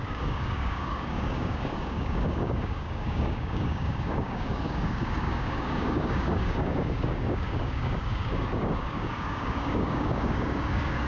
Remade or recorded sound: remade